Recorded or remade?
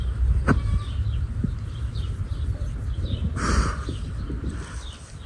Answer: recorded